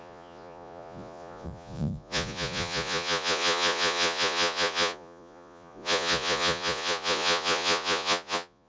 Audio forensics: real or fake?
fake